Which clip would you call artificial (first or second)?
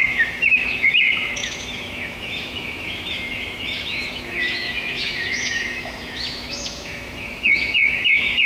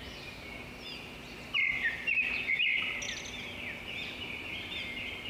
first